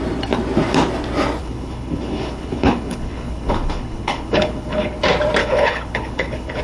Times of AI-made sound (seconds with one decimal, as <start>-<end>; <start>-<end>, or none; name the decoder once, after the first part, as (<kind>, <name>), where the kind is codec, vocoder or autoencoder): 1.4-5.0 (codec, HILCodec); 5.4-6.6